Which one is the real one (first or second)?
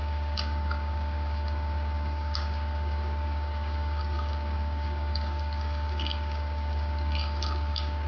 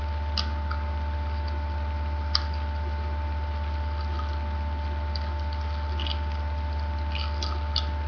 second